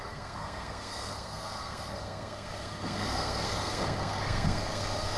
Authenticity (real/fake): fake